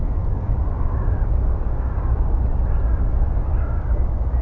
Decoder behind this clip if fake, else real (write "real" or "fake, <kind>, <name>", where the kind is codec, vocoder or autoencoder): real